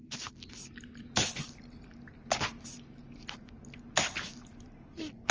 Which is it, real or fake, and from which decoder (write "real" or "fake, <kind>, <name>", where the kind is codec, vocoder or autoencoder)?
real